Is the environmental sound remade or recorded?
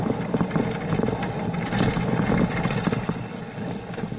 recorded